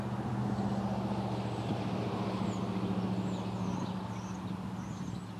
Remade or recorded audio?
recorded